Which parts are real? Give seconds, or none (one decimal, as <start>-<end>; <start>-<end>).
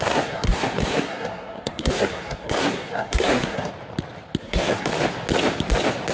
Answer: 3.7-4.4; 4.9-6.1